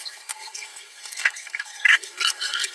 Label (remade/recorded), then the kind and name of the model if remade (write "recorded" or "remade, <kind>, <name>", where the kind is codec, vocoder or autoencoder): remade, codec, SNAC